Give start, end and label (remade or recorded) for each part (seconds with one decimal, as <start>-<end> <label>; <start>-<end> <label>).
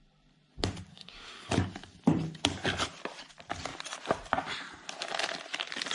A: 0.0-0.9 recorded; 0.9-1.5 remade; 1.5-5.9 recorded